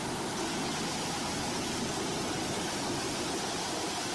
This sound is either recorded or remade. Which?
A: recorded